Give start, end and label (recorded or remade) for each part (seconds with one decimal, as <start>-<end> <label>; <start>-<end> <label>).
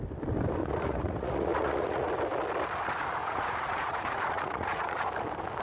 0.0-0.6 recorded; 0.6-2.1 remade; 2.1-3.2 recorded; 3.2-5.1 remade; 5.1-5.6 recorded